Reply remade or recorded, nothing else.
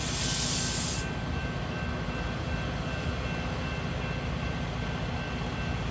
recorded